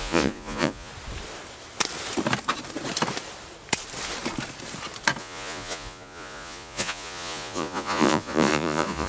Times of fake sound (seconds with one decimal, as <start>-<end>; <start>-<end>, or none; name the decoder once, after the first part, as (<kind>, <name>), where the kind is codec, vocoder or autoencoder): 0.0-0.9 (vocoder, Vocos); 5.2-9.1